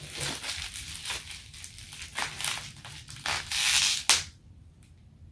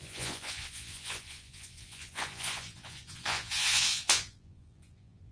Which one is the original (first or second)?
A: first